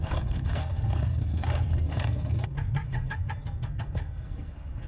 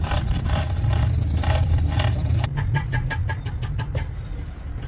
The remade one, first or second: first